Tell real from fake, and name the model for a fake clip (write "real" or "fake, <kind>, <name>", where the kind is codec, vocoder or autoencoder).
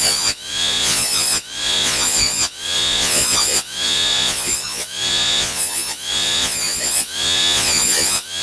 fake, vocoder, Vocos